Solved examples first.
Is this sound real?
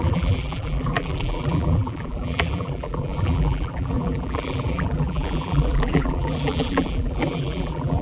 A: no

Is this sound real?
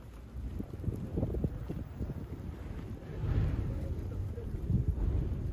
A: yes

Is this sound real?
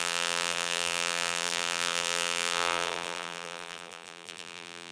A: no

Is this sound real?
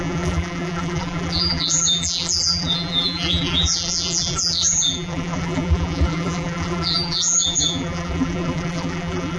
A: no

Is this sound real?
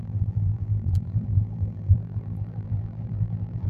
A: no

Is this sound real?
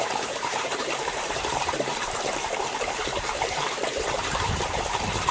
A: no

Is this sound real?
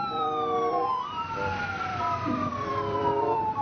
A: no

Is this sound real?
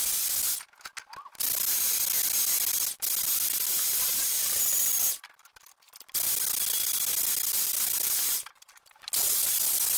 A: yes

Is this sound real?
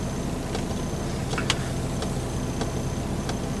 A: yes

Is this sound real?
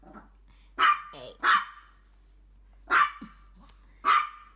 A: yes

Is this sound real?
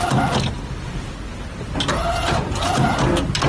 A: yes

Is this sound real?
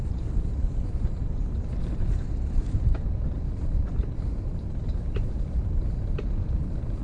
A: no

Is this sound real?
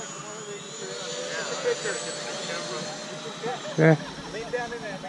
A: yes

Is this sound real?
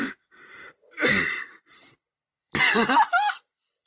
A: no